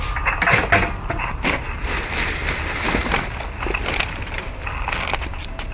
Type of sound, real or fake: real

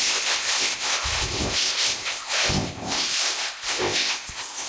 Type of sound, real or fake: fake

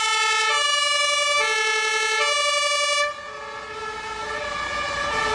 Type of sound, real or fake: real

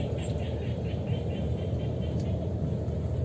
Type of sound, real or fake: real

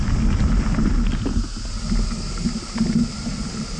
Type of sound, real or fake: real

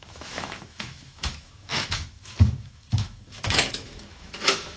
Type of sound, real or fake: fake